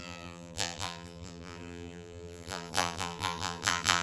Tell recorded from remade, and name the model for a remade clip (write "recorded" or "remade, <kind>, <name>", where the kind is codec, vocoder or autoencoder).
remade, vocoder, BigVGAN v2